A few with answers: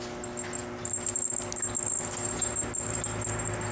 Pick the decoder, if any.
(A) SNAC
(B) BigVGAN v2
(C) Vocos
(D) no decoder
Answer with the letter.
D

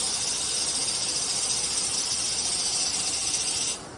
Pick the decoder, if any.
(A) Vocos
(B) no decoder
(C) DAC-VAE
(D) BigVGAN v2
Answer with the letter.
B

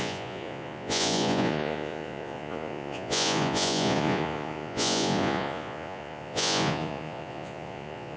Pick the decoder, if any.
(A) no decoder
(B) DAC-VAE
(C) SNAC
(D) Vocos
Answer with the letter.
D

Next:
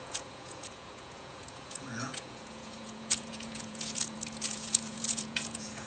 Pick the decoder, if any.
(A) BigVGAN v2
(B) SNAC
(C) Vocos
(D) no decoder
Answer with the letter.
C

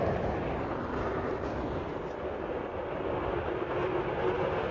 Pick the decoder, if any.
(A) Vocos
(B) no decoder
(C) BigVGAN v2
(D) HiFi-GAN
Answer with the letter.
B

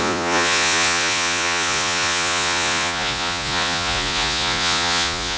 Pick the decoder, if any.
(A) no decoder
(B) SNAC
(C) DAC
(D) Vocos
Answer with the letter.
D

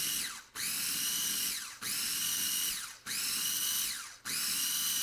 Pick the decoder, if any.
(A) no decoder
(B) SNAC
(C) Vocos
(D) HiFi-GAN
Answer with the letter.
A